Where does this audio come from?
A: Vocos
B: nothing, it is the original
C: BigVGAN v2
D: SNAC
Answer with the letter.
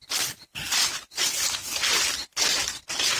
B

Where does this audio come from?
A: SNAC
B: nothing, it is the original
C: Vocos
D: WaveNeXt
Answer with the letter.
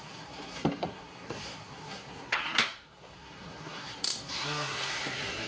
A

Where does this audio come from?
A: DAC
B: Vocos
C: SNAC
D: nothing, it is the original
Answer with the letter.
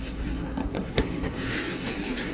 C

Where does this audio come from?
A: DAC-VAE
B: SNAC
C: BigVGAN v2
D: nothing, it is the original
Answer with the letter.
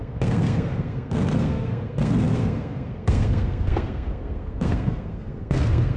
B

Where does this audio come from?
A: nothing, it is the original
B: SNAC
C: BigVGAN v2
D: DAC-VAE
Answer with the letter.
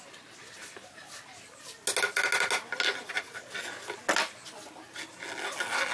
A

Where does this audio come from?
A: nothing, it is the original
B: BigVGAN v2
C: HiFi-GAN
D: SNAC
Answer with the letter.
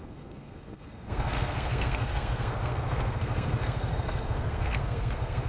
D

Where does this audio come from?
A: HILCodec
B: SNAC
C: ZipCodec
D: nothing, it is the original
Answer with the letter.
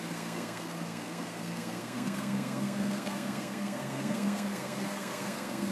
B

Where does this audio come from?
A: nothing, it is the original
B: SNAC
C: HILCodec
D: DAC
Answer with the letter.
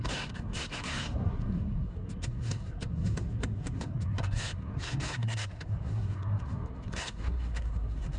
B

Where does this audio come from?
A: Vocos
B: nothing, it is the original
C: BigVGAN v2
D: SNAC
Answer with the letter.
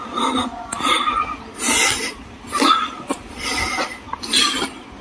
B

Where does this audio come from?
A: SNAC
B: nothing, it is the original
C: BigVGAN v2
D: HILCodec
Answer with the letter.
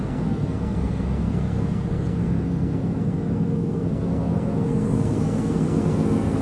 A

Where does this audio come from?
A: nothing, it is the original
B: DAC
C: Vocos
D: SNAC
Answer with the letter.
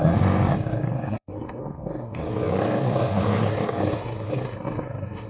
D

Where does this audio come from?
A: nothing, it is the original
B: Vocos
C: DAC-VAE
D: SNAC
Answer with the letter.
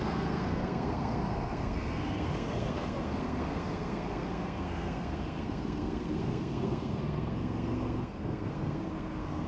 D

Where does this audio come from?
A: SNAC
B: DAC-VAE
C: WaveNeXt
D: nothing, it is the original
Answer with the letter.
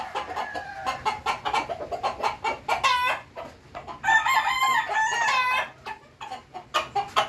D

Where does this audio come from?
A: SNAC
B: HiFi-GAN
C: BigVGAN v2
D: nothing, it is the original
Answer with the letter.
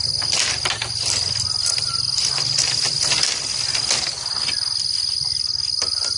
D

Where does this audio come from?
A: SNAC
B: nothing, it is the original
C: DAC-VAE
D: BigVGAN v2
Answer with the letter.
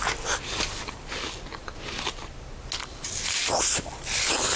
B